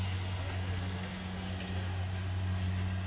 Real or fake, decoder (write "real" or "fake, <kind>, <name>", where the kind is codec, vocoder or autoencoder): real